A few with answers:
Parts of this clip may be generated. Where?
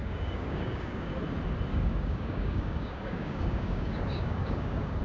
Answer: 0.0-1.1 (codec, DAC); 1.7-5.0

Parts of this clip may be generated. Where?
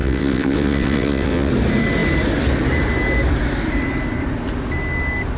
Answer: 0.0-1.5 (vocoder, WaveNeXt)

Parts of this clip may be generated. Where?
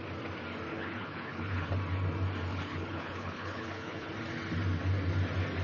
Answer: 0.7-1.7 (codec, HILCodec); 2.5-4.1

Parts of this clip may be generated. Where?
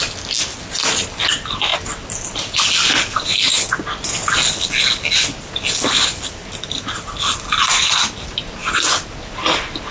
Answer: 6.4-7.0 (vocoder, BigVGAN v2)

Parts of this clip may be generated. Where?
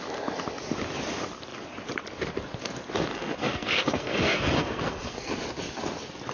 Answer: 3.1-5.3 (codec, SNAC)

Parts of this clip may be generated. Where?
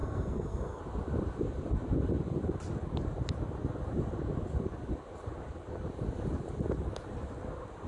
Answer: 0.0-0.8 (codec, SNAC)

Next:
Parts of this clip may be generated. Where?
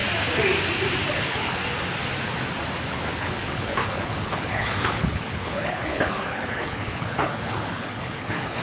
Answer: 1.1-1.6 (codec, HILCodec); 2.9-8.6